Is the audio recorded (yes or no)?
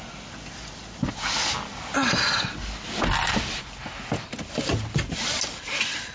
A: yes